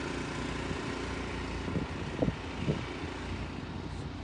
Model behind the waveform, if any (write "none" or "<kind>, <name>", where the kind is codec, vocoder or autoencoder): none